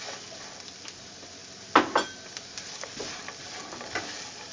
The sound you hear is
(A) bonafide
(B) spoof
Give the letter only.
A